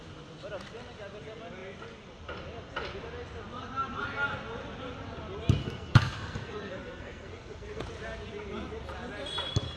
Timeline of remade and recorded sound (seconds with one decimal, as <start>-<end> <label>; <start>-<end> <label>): 0.0-5.6 recorded; 5.6-7.8 remade; 7.8-9.8 recorded